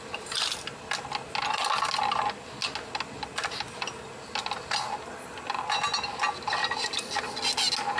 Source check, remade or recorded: recorded